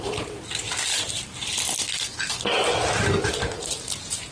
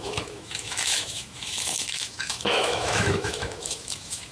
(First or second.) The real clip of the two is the first